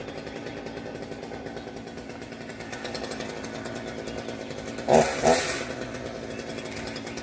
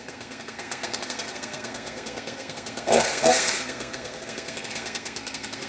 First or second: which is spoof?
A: second